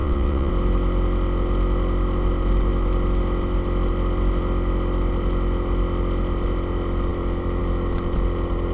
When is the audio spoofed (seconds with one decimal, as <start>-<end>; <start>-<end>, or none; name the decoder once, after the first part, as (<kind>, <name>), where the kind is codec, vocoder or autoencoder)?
0.0-0.5 (vocoder, WaveNeXt)